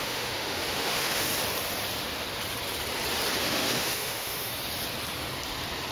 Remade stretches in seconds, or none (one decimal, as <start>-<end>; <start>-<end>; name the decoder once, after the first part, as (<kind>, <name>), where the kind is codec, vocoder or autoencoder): 0.0-1.3 (autoencoder, DAC-VAE); 3.4-4.5